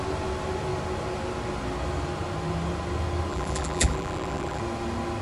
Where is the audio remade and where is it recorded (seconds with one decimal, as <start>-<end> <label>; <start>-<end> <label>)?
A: 0.0-3.3 recorded; 3.3-4.6 remade; 4.6-5.2 recorded

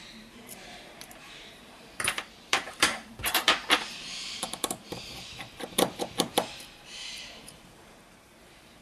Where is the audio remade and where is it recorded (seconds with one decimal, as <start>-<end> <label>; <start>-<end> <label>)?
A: 0.0-8.8 remade

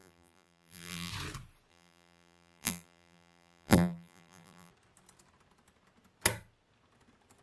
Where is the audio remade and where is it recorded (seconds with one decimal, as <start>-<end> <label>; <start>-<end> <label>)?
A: 0.0-1.1 remade; 1.1-1.7 recorded; 1.7-4.7 remade; 4.7-7.4 recorded

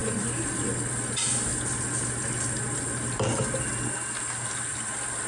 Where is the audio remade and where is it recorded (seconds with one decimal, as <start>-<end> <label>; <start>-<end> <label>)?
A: 0.0-5.3 recorded

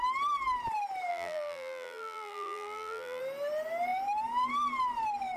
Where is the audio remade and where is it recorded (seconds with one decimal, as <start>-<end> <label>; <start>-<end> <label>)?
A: 0.0-1.1 recorded; 1.1-3.2 remade; 3.2-5.4 recorded

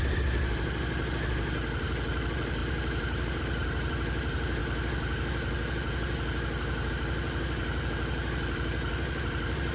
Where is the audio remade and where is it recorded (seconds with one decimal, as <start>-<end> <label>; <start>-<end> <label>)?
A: 0.0-4.6 remade; 4.6-6.9 recorded; 6.9-9.7 remade